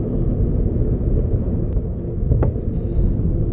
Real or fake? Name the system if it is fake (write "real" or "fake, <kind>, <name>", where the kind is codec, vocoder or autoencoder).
real